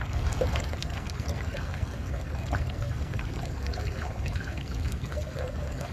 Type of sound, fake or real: fake